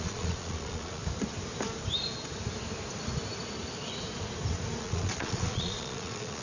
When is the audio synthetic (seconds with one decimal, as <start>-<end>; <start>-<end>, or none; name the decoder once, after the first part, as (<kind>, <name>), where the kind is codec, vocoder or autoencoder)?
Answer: 0.0-1.0 (vocoder, Vocos); 4.8-6.4